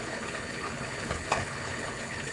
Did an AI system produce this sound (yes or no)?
yes